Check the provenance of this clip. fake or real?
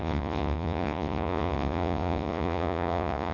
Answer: fake